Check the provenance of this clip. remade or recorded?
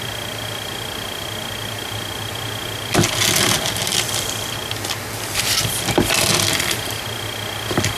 recorded